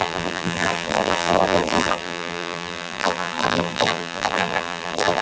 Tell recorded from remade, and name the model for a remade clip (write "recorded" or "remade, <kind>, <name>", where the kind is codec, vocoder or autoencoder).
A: remade, vocoder, BigVGAN v2